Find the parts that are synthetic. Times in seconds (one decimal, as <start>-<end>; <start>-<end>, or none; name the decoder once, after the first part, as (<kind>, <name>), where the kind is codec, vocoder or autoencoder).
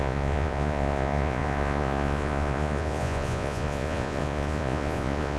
0.0-5.4 (vocoder, Vocos)